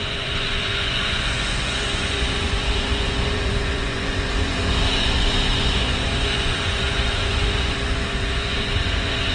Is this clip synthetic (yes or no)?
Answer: yes